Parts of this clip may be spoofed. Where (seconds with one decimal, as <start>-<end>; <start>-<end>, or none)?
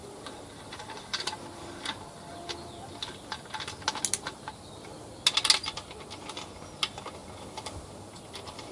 0.0-3.5; 7.2-8.7